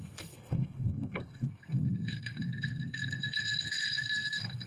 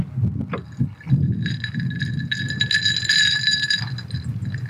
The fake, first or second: first